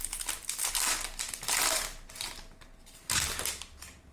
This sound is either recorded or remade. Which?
recorded